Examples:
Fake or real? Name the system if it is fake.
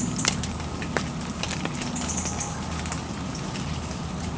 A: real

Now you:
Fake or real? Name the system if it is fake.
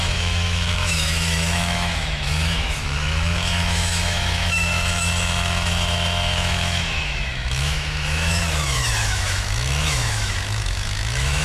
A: fake, autoencoder, DAC-VAE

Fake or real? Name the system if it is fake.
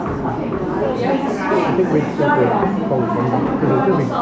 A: real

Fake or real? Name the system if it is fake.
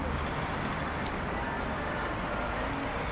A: real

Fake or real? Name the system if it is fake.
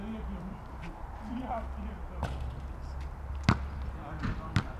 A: real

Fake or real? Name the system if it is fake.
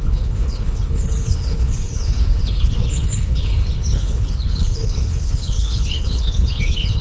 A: fake, codec, HILCodec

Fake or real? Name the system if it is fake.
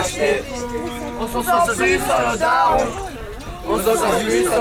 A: real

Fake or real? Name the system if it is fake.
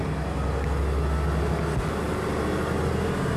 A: real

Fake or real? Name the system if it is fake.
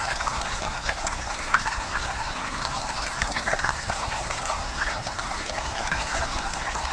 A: fake, codec, SNAC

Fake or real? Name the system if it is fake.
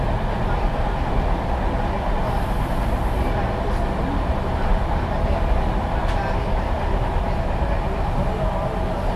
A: real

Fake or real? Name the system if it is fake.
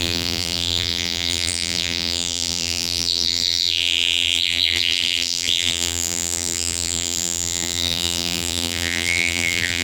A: fake, vocoder, BigVGAN v2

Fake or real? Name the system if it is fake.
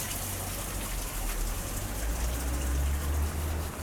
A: real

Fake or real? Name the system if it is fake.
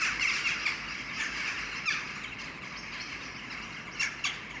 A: real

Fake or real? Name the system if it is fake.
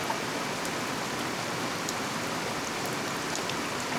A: real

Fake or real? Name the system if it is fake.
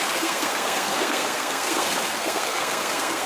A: fake, codec, SNAC